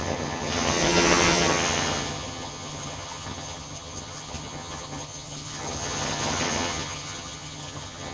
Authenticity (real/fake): fake